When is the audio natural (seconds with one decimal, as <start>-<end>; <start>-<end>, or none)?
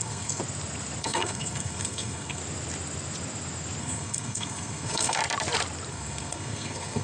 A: 0.4-1.0; 2.4-3.8; 5.2-5.9